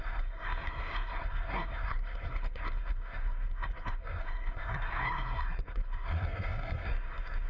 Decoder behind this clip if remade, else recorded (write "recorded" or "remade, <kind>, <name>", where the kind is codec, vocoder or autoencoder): remade, codec, SNAC